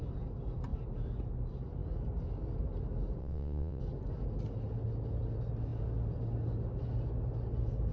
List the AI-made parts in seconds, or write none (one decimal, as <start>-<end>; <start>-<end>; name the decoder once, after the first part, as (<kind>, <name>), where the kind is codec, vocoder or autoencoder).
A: 3.2-3.8 (vocoder, WaveNeXt)

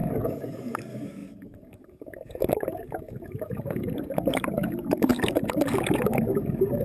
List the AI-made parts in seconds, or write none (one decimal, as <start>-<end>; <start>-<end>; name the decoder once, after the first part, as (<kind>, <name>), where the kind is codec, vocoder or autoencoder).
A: 0.0-6.8 (codec, DAC)

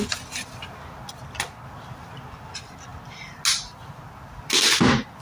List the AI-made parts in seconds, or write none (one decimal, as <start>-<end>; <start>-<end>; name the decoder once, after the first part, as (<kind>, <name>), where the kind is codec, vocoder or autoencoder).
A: none

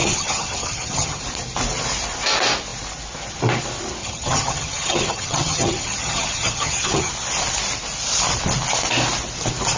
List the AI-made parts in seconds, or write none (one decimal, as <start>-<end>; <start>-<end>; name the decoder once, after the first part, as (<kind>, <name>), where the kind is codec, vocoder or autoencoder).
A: 0.0-1.2 (vocoder, HiFi-GAN); 4.0-7.1

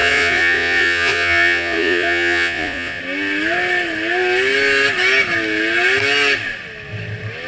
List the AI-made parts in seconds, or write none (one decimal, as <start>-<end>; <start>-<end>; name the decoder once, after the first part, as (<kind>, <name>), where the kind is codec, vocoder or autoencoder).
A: 0.0-3.0 (vocoder, Vocos)

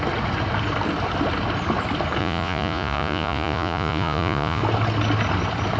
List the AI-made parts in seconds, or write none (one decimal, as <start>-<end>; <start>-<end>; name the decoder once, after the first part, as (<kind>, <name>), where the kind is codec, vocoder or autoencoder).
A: 2.2-4.6 (vocoder, Vocos)

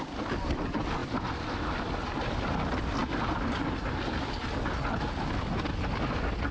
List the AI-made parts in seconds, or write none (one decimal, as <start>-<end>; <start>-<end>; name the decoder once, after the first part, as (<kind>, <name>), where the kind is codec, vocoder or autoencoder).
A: none